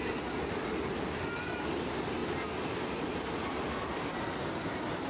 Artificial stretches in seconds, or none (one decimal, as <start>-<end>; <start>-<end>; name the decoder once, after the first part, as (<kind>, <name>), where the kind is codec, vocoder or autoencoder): none